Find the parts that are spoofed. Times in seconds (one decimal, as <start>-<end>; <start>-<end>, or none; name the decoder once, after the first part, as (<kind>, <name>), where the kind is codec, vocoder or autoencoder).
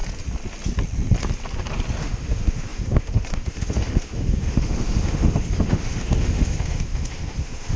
2.0-7.8 (autoencoder, DAC-VAE)